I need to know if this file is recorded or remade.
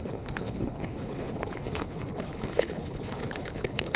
remade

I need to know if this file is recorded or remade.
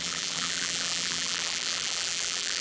remade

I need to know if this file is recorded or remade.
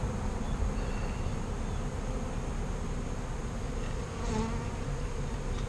recorded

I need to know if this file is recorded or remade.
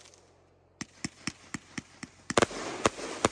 recorded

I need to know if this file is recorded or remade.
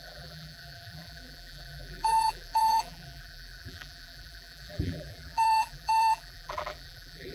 remade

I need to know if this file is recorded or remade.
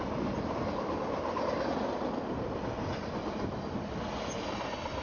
recorded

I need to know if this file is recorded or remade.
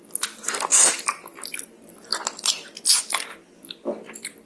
recorded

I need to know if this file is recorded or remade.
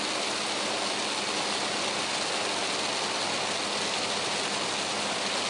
recorded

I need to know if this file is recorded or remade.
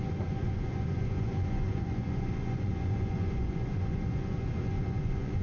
remade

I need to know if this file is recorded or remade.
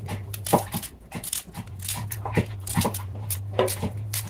remade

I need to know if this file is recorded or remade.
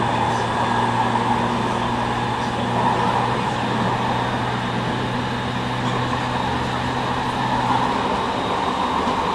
recorded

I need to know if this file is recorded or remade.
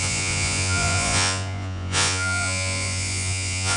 remade